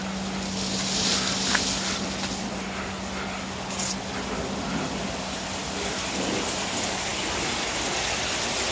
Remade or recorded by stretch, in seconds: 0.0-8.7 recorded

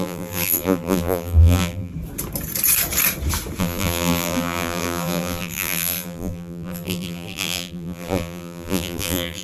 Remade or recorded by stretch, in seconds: 0.0-1.9 remade; 1.9-3.6 recorded; 3.6-9.4 remade